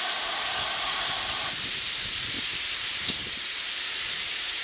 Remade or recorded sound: remade